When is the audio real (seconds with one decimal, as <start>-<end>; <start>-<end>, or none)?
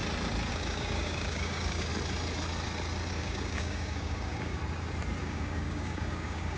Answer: 0.0-0.5; 1.9-3.1; 4.6-5.2